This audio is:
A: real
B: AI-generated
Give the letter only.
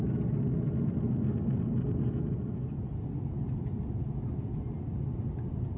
A